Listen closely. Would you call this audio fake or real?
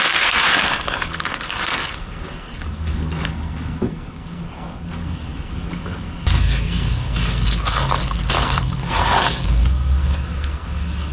fake